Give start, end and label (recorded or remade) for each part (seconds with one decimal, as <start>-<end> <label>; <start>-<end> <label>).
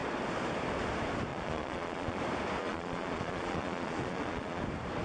0.0-1.3 recorded; 1.3-2.2 remade; 2.2-2.6 recorded; 2.6-4.6 remade; 4.6-5.0 recorded